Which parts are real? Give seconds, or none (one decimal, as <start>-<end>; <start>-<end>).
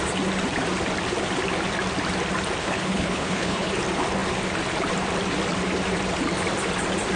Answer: 0.0-2.6; 3.7-7.2